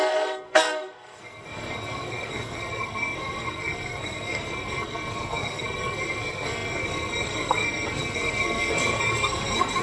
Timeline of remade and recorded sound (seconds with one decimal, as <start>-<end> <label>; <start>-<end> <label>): 0.0-9.8 remade